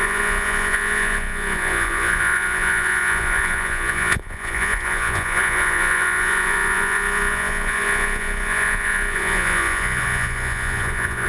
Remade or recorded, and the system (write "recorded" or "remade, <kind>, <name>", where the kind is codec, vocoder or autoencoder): remade, vocoder, Vocos